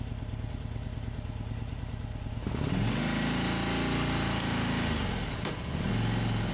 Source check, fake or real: real